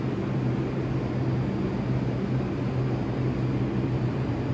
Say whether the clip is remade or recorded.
recorded